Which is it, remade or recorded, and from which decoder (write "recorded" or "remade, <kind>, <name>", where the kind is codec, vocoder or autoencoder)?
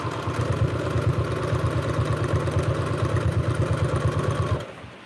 recorded